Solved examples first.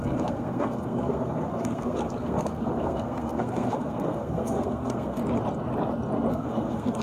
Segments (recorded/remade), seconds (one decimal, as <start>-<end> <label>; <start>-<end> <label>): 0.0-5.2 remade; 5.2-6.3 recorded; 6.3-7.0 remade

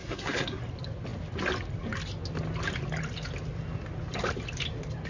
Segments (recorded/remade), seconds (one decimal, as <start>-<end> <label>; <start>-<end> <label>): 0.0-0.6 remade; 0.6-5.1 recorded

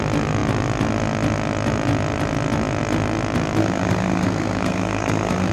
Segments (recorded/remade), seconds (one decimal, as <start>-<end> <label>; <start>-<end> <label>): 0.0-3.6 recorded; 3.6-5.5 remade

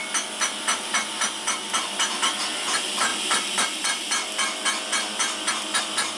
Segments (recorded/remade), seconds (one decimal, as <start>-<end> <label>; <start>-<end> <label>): 0.0-6.2 recorded

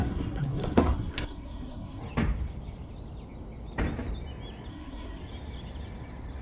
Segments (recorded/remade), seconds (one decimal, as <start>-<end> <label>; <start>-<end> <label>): 0.0-2.0 remade; 2.0-4.7 recorded; 4.7-5.2 remade; 5.2-6.4 recorded

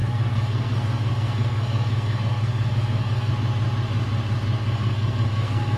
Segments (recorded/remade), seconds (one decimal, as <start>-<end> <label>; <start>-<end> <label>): 0.0-3.3 remade; 3.3-4.6 recorded; 4.6-5.8 remade

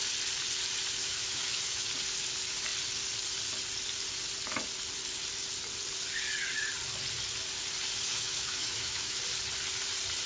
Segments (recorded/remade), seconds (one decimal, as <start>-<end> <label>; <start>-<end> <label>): 0.0-1.0 recorded; 1.0-1.9 remade; 1.9-8.1 recorded; 8.1-9.2 remade; 9.2-10.3 recorded